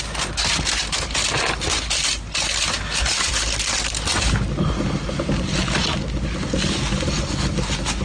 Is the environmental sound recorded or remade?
recorded